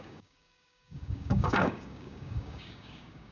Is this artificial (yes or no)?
yes